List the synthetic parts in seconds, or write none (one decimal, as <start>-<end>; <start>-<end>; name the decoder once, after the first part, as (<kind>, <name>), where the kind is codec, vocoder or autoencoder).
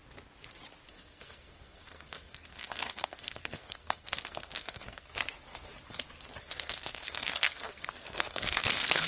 0.9-5.1 (codec, SNAC); 6.4-9.1